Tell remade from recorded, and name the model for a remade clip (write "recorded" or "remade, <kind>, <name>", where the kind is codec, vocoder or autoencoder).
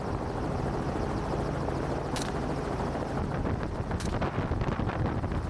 recorded